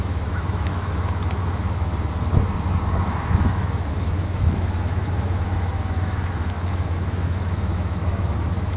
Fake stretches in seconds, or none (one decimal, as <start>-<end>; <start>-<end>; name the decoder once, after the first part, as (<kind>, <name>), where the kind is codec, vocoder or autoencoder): 0.0-1.9 (autoencoder, DAC-VAE); 3.0-8.8